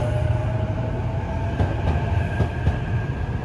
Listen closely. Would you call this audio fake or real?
real